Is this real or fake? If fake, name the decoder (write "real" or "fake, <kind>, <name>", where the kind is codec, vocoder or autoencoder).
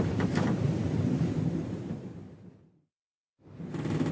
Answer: real